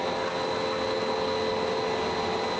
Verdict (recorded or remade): recorded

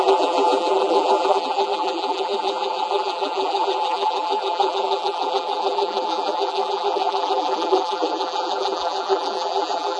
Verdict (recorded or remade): remade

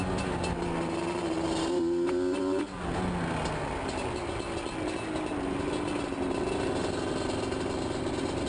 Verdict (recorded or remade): recorded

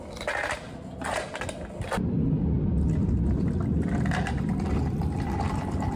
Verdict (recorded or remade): recorded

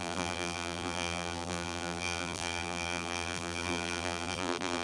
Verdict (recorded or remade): remade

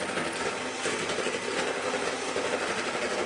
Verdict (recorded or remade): recorded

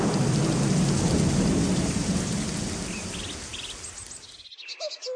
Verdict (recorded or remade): recorded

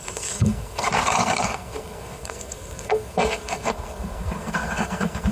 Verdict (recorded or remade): remade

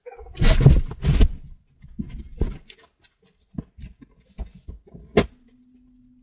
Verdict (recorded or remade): recorded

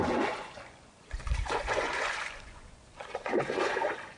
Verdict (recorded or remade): remade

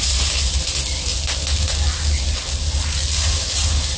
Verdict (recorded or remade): recorded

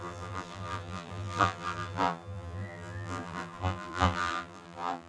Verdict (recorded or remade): remade